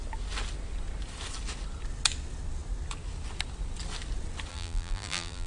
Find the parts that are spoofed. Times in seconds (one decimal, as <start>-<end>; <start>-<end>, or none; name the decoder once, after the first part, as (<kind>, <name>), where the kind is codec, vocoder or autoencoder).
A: 4.5-5.5 (vocoder, BigVGAN v2)